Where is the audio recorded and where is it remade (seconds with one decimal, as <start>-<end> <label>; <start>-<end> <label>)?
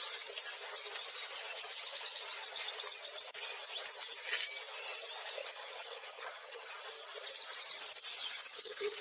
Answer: 0.0-1.5 recorded; 1.5-2.2 remade; 2.2-5.4 recorded; 5.4-6.7 remade; 6.7-8.2 recorded; 8.2-9.0 remade